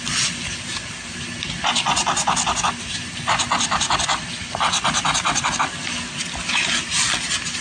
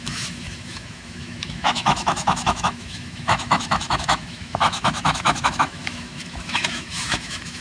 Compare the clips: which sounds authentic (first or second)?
first